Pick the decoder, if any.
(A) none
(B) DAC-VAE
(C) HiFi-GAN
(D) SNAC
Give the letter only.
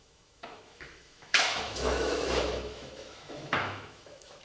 B